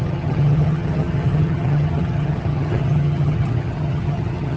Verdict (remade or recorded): remade